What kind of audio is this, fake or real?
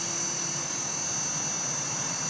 real